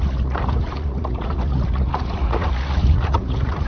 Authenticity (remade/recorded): remade